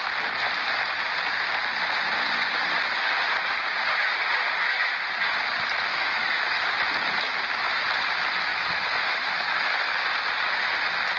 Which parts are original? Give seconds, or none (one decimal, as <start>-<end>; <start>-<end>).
0.0-5.9; 6.5-8.5; 9.9-11.2